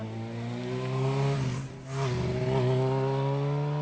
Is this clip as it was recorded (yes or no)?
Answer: yes